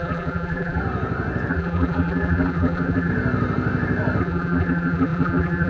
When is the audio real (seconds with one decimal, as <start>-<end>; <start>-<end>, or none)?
0.8-1.5; 3.1-4.2